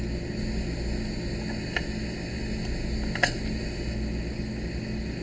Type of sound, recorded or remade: recorded